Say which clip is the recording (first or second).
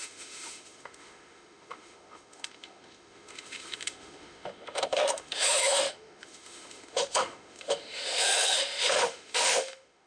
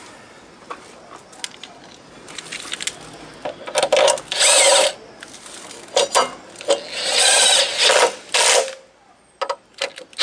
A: second